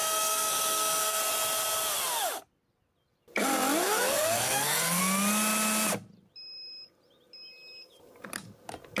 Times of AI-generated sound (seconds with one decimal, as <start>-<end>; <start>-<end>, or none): 0.0-1.2; 3.8-5.0